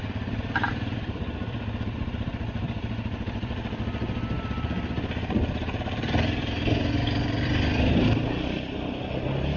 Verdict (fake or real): real